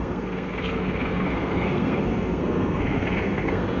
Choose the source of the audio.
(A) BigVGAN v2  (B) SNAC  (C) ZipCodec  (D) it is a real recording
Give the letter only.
B